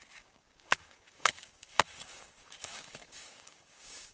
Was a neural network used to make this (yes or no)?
yes